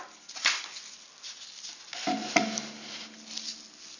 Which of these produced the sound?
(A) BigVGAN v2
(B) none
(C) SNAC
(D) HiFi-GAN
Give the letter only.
B